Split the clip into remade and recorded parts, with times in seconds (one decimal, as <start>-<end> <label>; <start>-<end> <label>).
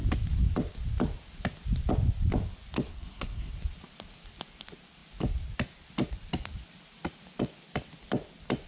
0.0-2.9 recorded; 2.9-3.5 remade; 3.5-8.7 recorded